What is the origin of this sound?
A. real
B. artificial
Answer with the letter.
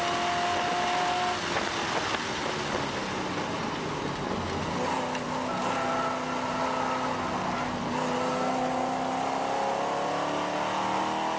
A